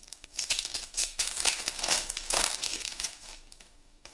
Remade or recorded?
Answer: remade